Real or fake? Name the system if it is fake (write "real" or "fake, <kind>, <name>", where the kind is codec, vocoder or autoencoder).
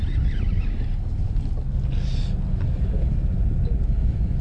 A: real